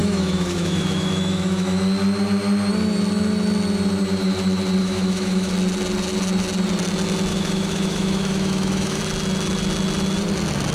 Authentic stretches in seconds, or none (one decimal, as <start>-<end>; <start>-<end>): 1.8-4.8; 5.5-7.3; 9.0-10.7